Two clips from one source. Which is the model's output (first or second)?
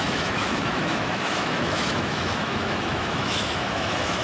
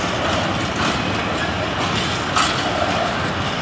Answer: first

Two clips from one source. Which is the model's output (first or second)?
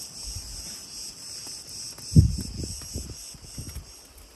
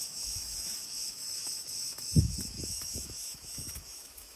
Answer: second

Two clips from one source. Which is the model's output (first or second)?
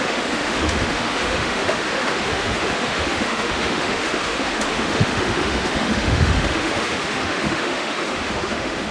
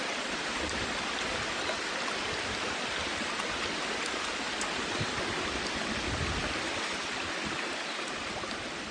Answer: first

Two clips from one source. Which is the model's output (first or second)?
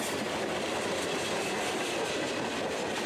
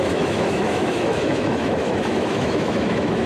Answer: second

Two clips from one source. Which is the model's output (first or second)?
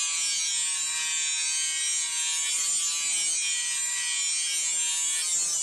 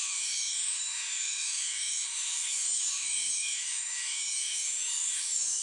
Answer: second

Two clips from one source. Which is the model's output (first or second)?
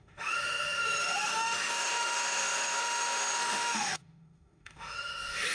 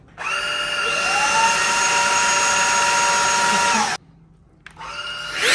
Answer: first